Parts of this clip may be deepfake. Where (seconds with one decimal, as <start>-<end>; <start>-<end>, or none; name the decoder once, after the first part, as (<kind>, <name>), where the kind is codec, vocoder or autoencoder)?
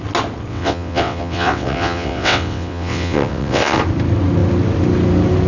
0.5-3.8 (vocoder, WaveNeXt)